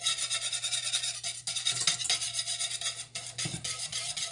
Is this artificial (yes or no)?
no